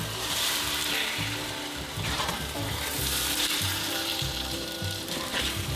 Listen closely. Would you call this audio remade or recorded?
remade